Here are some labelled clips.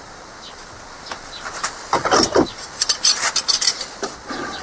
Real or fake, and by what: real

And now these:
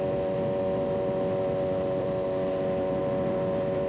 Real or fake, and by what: real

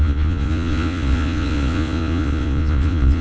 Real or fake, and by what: fake, vocoder, Vocos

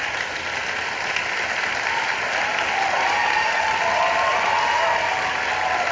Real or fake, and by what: real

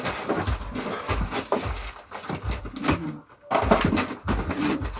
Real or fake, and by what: real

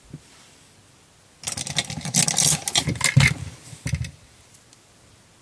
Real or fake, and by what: real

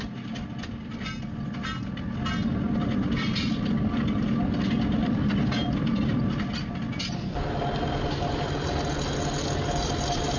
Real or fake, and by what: real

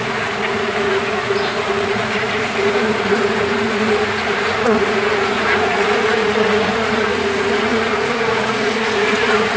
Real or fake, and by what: fake, vocoder, Vocos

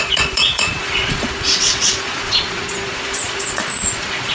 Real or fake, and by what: fake, vocoder, Vocos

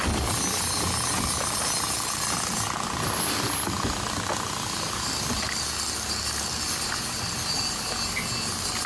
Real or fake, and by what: real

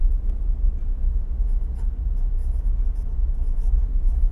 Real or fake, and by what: real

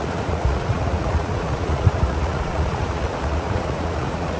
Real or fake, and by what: fake, vocoder, Vocos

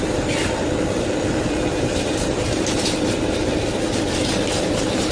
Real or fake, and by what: real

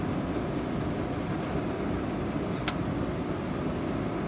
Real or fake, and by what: real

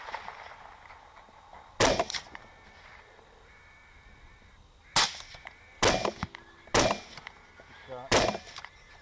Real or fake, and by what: real